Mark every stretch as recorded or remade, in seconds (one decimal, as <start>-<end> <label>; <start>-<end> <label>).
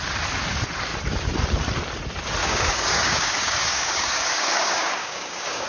0.0-2.4 recorded; 2.4-5.7 remade